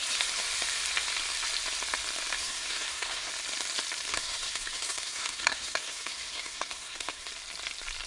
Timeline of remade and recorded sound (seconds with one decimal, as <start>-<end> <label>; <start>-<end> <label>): 0.0-2.4 recorded; 2.4-3.3 remade; 3.3-4.1 recorded; 4.1-7.3 remade; 7.3-8.1 recorded